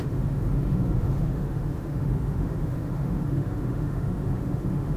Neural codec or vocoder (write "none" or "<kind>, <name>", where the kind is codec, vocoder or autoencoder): autoencoder, DAC-VAE